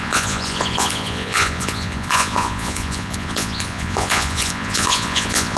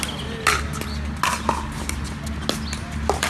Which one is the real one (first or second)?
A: second